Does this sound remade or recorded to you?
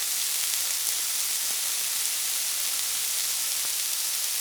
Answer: recorded